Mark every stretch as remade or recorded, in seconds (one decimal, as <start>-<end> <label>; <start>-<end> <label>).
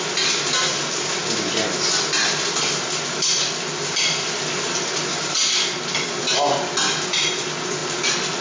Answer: 0.0-8.4 recorded